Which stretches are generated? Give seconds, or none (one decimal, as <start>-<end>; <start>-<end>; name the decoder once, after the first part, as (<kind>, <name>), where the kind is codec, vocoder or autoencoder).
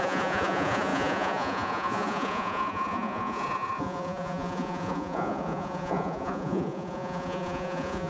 0.0-8.1 (vocoder, Vocos)